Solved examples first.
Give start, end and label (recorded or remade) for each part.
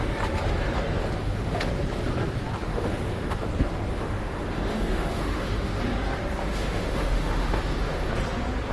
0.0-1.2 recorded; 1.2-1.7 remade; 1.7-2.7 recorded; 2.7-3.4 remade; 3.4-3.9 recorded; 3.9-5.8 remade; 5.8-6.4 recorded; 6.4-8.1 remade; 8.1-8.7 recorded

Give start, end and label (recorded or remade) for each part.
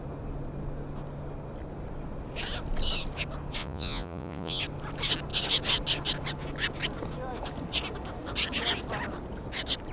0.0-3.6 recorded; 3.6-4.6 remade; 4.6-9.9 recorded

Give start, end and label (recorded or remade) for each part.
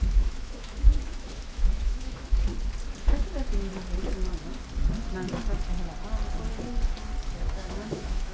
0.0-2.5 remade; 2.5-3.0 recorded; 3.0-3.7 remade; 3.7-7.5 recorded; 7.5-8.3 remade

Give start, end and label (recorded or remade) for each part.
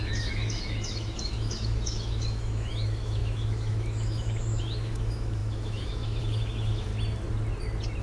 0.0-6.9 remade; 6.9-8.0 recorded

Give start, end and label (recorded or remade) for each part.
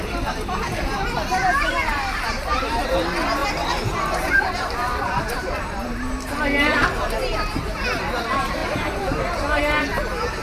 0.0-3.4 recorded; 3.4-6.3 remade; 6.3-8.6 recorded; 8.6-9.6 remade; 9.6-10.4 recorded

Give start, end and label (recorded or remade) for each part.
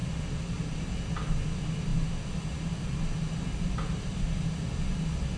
0.0-5.4 recorded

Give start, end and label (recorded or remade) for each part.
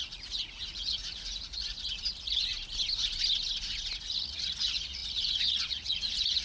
0.0-2.5 remade; 2.5-4.0 recorded; 4.0-6.4 remade